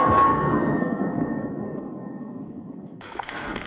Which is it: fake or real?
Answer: fake